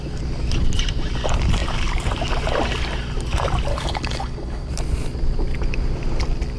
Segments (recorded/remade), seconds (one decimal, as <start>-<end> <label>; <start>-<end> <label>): 0.0-3.7 recorded; 3.7-4.7 remade; 4.7-6.6 recorded